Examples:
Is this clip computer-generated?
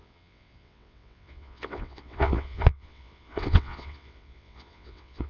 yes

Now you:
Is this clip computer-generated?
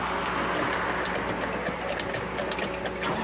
no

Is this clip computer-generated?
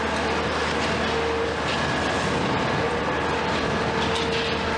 no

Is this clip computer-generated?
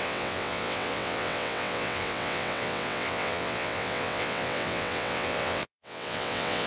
yes